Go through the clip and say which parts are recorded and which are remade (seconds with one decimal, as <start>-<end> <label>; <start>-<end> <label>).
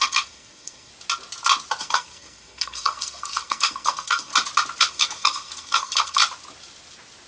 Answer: 0.0-0.9 remade; 0.9-1.8 recorded; 1.8-4.3 remade; 4.3-4.9 recorded; 4.9-6.2 remade; 6.2-7.3 recorded